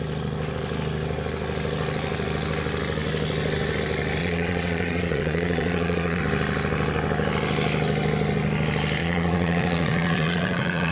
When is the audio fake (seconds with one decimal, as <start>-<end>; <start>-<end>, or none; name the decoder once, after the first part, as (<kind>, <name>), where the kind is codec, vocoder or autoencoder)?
4.2-6.2 (vocoder, Vocos); 9.0-10.9